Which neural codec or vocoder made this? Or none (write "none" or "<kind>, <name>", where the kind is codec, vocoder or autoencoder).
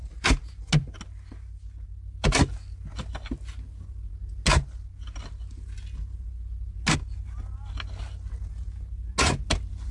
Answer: none